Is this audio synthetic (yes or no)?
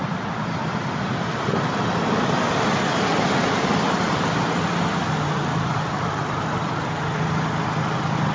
no